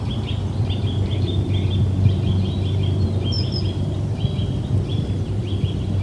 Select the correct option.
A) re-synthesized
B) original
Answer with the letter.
B